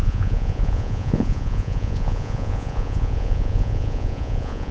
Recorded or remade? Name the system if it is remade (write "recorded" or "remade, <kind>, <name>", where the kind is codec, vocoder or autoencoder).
remade, vocoder, Vocos